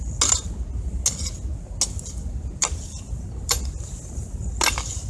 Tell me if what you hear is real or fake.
real